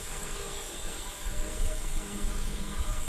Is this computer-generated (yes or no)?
yes